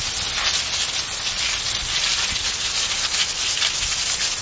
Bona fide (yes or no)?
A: yes